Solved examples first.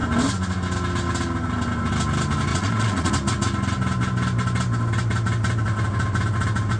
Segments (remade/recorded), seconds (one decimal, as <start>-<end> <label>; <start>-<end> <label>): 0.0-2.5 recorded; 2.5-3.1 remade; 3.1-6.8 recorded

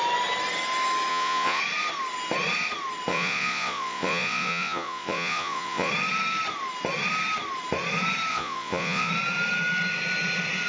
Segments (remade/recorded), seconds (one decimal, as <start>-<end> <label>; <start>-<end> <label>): 0.0-1.1 recorded; 1.1-1.6 remade; 1.6-3.1 recorded; 3.1-5.9 remade; 5.9-8.3 recorded; 8.3-9.1 remade; 9.1-10.7 recorded

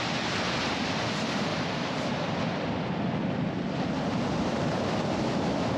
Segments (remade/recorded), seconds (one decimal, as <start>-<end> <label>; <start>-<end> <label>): 0.0-1.5 remade; 1.5-5.0 recorded; 5.0-5.8 remade

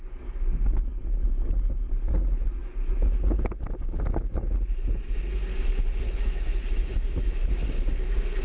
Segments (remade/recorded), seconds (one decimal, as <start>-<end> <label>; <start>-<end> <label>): 0.0-6.2 recorded; 6.2-7.6 remade; 7.6-8.4 recorded